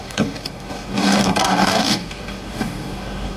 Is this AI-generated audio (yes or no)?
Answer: yes